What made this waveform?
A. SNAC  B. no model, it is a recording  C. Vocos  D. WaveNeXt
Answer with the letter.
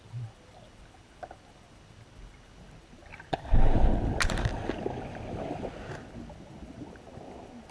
B